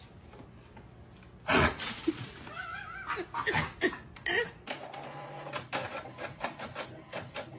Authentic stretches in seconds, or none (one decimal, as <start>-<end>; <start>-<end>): 0.0-1.5; 2.4-7.6